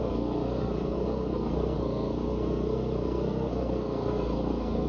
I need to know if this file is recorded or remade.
remade